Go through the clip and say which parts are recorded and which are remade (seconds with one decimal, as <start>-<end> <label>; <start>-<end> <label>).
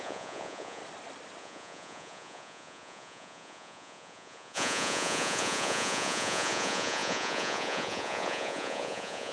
0.0-0.8 remade; 0.8-1.4 recorded; 1.4-9.3 remade